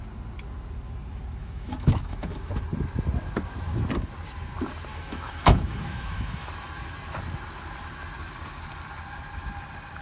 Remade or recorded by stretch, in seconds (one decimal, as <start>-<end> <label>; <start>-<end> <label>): 0.0-1.4 recorded; 1.4-2.5 remade; 2.5-4.9 recorded; 4.9-6.5 remade; 6.5-10.0 recorded